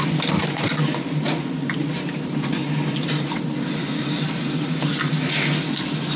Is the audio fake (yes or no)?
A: no